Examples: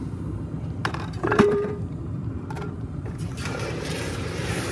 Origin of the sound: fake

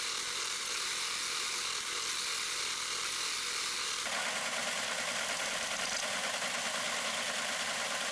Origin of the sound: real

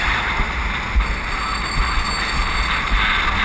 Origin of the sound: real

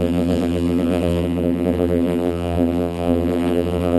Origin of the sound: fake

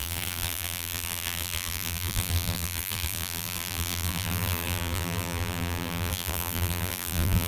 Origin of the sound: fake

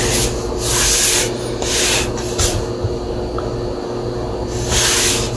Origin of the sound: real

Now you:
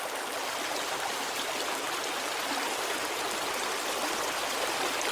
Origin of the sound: fake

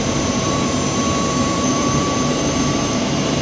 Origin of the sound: fake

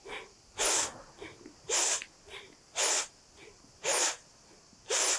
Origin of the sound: real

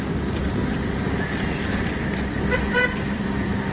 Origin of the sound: fake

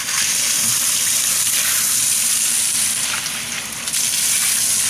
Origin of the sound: real